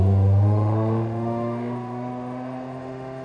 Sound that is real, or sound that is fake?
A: fake